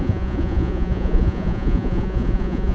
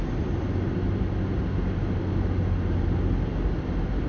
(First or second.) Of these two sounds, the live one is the second